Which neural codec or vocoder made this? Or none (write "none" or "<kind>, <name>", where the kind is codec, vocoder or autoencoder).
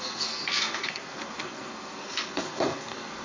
codec, SNAC